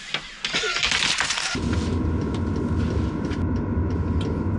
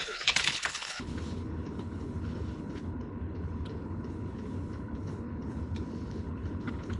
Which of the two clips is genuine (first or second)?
first